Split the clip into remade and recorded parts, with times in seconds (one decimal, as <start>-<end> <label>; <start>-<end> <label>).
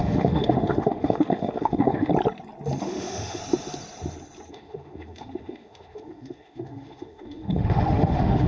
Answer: 0.0-2.1 remade; 2.1-2.8 recorded; 2.8-3.4 remade; 3.4-4.5 recorded; 4.5-8.5 remade